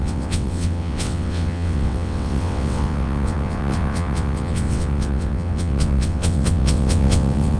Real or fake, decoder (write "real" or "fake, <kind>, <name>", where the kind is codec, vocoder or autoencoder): fake, vocoder, WaveNeXt